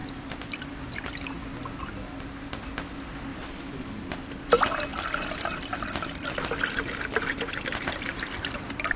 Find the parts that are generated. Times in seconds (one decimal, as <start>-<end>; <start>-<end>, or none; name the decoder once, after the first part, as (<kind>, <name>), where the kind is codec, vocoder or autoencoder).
0.0-0.7 (vocoder, BigVGAN v2); 3.3-4.1; 4.9-8.6